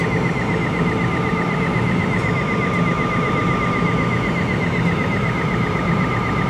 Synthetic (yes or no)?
no